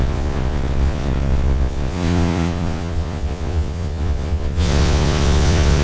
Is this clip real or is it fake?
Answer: fake